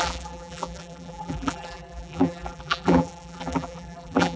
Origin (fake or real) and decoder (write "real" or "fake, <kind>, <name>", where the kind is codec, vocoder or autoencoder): fake, vocoder, BigVGAN v2